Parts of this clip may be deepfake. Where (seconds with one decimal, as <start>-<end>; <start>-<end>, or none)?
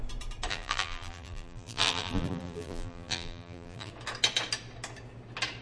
0.5-3.9